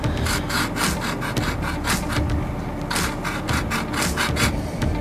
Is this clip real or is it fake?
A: real